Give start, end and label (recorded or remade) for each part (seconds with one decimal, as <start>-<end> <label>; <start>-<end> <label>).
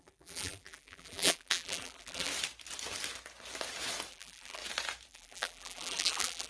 0.0-2.3 remade; 2.3-4.1 recorded; 4.1-4.6 remade; 4.6-5.1 recorded; 5.1-6.5 remade